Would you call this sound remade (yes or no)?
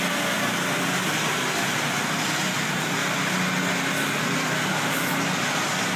no